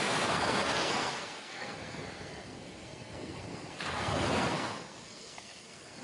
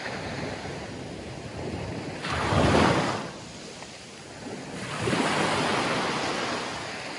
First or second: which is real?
second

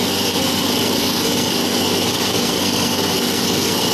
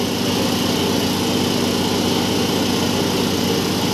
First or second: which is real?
second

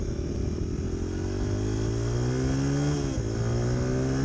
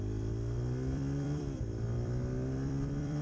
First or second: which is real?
first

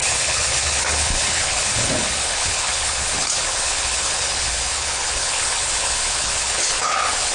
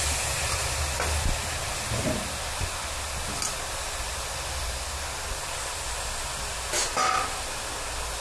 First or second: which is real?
second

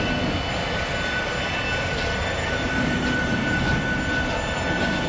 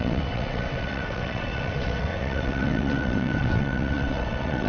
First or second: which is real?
first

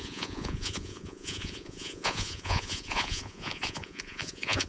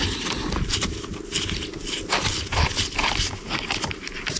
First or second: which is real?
second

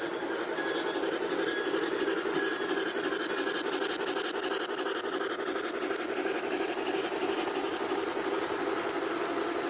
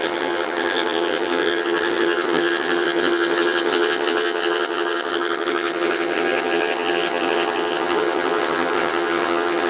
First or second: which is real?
first